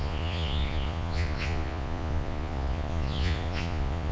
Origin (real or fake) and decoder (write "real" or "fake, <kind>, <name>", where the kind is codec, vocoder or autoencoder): fake, vocoder, Vocos